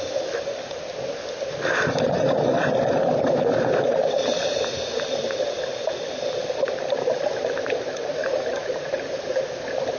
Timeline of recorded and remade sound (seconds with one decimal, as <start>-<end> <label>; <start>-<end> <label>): 0.0-10.0 remade